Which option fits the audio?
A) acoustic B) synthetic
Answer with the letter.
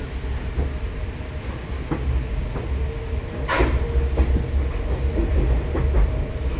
A